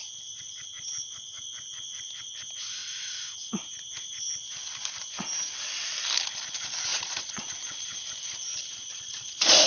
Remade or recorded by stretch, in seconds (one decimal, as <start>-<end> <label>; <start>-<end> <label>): 0.0-6.9 recorded; 6.9-7.5 remade; 7.5-8.9 recorded; 8.9-9.7 remade